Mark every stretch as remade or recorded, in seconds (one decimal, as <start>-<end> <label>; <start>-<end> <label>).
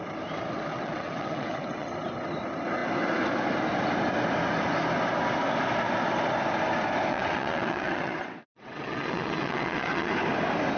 0.0-0.7 recorded; 0.7-1.9 remade; 1.9-7.1 recorded; 7.1-10.1 remade; 10.1-10.8 recorded